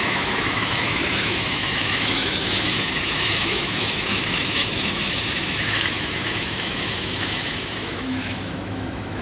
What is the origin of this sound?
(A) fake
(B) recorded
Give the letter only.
A